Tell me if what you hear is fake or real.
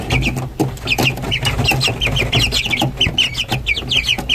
real